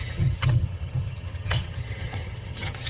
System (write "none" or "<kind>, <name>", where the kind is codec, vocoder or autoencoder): vocoder, HiFi-GAN